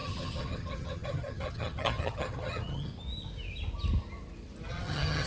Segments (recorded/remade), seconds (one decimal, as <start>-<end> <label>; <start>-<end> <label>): 0.0-2.9 remade; 2.9-4.7 recorded; 4.7-5.3 remade